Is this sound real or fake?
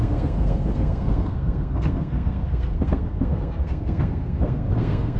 fake